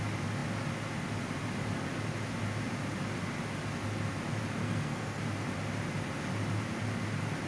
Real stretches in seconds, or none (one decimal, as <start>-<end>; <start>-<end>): 0.0-4.6; 5.2-7.5